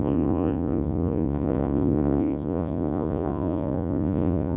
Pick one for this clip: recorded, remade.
remade